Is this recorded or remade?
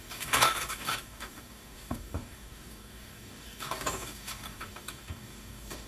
remade